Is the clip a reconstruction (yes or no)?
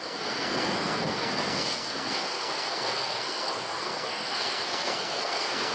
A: yes